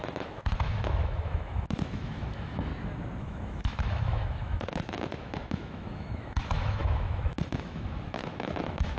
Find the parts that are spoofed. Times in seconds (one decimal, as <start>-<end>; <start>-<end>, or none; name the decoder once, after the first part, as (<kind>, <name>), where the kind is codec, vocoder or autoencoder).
0.0-2.7 (autoencoder, DAC-VAE); 3.2-9.0

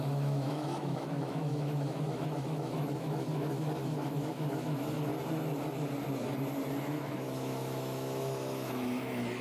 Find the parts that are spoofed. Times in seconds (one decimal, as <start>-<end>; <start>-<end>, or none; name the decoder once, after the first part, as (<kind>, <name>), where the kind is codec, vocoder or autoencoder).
0.0-5.1 (autoencoder, DAC-VAE); 6.7-9.4

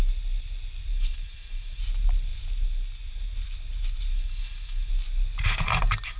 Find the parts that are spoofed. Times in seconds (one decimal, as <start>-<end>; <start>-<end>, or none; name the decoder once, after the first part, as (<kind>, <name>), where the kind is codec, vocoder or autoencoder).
0.9-1.8 (autoencoder, DAC-VAE); 4.1-4.9

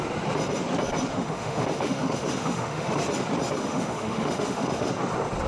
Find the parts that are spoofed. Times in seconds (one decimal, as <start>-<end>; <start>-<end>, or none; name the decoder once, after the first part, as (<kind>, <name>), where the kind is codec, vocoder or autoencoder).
1.1-3.0 (autoencoder, DAC-VAE); 3.6-4.9

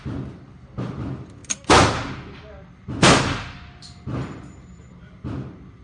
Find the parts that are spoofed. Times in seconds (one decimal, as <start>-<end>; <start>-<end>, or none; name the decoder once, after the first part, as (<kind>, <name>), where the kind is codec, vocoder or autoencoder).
none